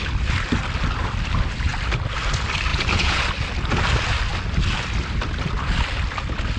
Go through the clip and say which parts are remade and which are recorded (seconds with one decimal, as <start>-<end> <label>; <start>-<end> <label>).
0.0-2.7 recorded; 2.7-3.3 remade; 3.3-6.6 recorded